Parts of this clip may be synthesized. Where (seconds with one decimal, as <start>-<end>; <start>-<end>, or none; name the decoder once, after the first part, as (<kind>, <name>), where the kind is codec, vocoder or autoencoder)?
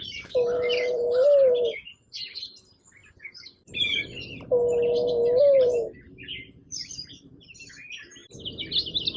0.0-3.0 (vocoder, BigVGAN v2); 5.4-8.2